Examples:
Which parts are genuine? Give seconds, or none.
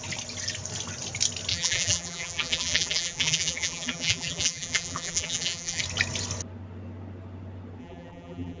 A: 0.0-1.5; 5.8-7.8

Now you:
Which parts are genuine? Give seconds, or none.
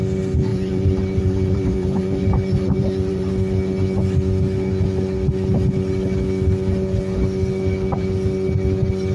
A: 0.0-0.5; 3.3-9.1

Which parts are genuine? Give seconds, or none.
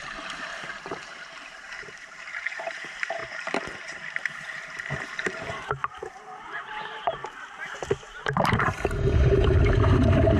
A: none